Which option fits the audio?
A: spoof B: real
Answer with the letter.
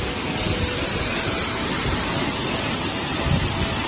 B